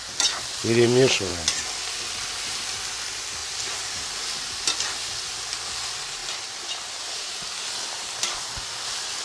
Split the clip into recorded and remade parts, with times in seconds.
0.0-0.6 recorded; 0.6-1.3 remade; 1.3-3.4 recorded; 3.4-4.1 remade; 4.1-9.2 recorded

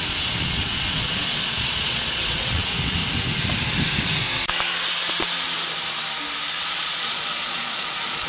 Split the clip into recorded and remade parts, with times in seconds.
0.0-3.0 remade; 3.0-6.6 recorded; 6.6-8.3 remade

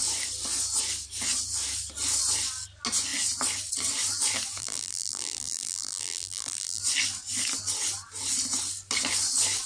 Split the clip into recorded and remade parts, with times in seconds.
0.0-4.6 recorded; 4.6-6.8 remade; 6.8-9.7 recorded

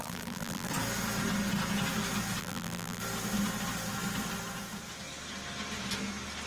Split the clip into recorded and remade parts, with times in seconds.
0.0-0.7 remade; 0.7-2.4 recorded; 2.4-3.0 remade; 3.0-6.5 recorded

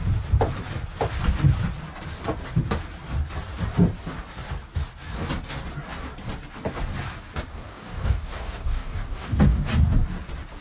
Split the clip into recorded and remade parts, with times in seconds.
0.0-7.5 recorded; 7.5-9.7 remade; 9.7-10.6 recorded